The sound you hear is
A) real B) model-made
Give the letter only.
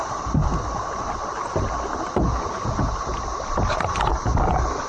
A